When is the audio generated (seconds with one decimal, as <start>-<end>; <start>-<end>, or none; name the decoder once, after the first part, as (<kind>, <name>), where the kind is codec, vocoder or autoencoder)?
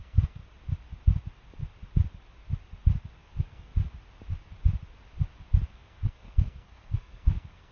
0.0-0.4 (codec, SNAC); 3.1-3.7; 5.7-7.7